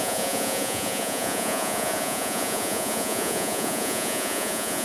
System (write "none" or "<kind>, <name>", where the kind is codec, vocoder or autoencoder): vocoder, Vocos